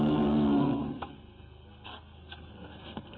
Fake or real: fake